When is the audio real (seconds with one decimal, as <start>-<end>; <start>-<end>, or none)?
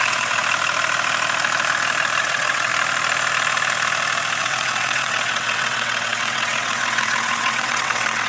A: 0.4-2.2; 2.7-4.4